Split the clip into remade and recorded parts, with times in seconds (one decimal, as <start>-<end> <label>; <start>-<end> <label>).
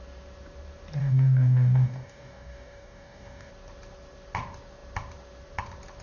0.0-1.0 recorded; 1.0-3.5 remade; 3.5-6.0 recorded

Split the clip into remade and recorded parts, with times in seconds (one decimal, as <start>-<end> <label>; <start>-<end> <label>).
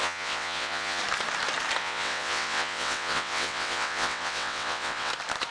0.0-1.0 remade; 1.0-1.8 recorded; 1.8-5.1 remade; 5.1-5.5 recorded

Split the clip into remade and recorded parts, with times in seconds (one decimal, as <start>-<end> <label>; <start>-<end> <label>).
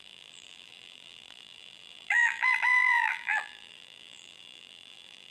0.0-5.3 remade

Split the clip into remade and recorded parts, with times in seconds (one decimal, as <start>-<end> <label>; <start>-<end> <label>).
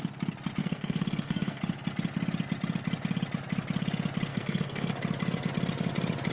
0.0-0.6 recorded; 0.6-1.6 remade; 1.6-4.3 recorded; 4.3-4.9 remade; 4.9-6.3 recorded